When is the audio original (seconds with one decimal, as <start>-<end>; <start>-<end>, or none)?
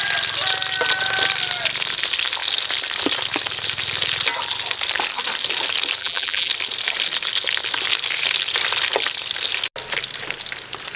0.0-6.0; 6.5-11.0